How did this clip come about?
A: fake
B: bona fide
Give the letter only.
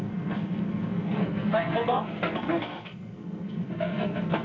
A